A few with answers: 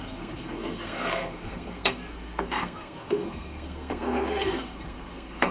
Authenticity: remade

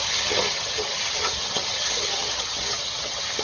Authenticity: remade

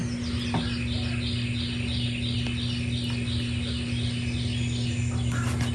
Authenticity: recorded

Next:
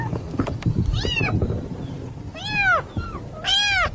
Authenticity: recorded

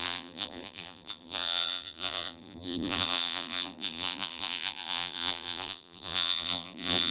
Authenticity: remade